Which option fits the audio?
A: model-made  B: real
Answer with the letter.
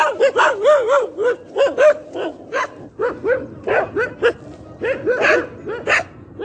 B